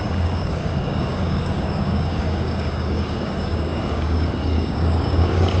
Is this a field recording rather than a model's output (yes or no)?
no